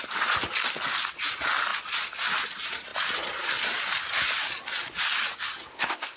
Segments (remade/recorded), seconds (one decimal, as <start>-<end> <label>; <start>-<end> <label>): 0.0-5.7 recorded; 5.7-6.2 remade